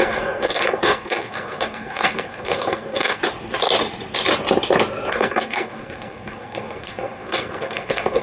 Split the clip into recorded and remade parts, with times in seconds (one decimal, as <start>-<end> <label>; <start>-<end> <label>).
0.0-3.2 remade; 3.2-5.1 recorded; 5.1-8.2 remade